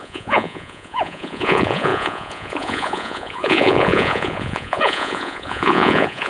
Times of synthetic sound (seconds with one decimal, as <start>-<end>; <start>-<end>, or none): 0.0-6.3